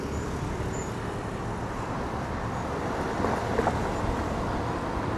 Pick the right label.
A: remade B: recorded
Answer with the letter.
A